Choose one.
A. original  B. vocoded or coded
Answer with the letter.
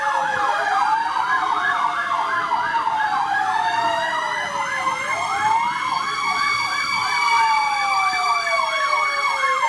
A